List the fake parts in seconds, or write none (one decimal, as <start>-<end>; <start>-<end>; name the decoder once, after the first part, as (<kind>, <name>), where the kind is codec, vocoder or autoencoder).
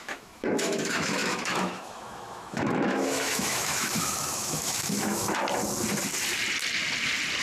0.0-5.4 (autoencoder, DAC-VAE)